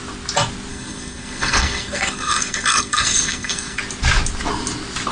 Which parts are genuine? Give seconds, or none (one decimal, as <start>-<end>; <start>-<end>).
0.0-0.7; 3.8-5.1